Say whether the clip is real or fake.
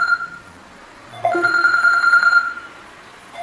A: fake